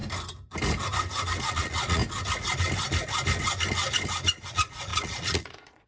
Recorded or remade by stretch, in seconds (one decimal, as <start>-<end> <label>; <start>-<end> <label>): 0.0-1.4 recorded; 1.4-2.0 remade; 2.0-4.5 recorded; 4.5-5.9 remade